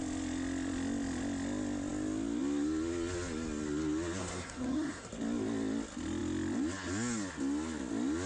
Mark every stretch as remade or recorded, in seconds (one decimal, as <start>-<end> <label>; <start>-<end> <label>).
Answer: 0.0-4.2 recorded; 4.2-5.1 remade; 5.1-8.3 recorded